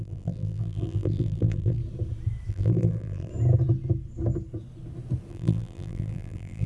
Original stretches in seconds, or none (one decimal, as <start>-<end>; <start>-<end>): 1.8-2.5; 3.3-5.3